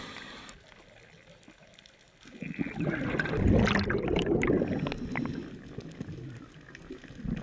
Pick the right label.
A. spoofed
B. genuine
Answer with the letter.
B